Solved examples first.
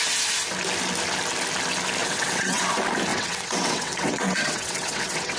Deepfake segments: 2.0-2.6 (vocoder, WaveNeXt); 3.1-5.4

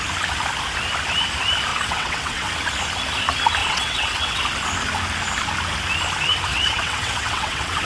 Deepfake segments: 1.7-2.5 (vocoder, WaveNeXt); 3.6-4.4; 6.5-7.8

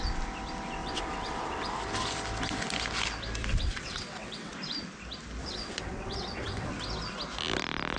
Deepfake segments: 0.8-1.7 (vocoder, WaveNeXt); 3.5-4.5; 5.4-6.7